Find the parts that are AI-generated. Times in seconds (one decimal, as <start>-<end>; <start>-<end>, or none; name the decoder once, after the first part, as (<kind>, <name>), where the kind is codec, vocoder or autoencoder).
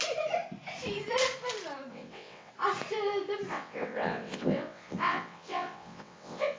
1.9-2.5 (vocoder, WaveNeXt); 3.5-6.6